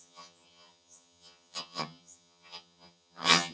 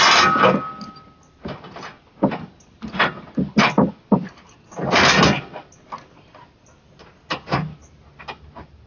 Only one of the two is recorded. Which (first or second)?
second